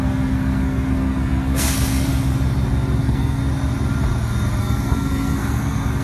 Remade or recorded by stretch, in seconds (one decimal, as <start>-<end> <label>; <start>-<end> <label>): 0.0-2.1 remade; 2.1-3.0 recorded; 3.0-3.4 remade; 3.4-4.6 recorded; 4.6-6.0 remade